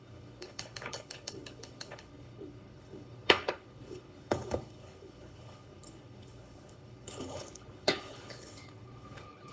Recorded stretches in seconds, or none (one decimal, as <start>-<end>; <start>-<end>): none